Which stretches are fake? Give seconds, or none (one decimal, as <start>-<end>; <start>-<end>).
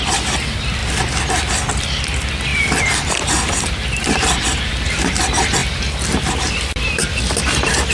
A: 2.5-3.7; 5.6-6.3